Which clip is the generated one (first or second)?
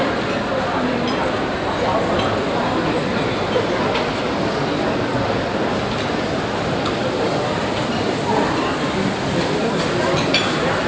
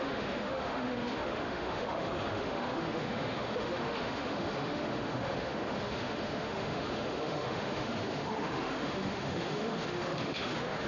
second